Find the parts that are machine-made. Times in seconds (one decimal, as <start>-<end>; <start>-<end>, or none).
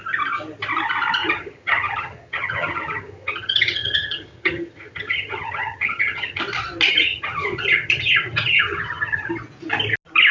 1.2-6.4; 6.9-9.3